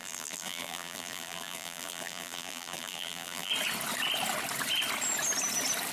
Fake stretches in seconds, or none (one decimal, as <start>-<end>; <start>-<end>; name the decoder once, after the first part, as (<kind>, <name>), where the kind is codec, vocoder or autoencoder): 0.0-3.5 (vocoder, BigVGAN v2)